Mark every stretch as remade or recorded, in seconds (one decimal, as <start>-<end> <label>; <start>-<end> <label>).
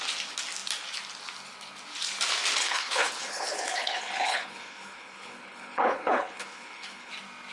0.0-2.6 recorded; 2.6-7.1 remade; 7.1-7.5 recorded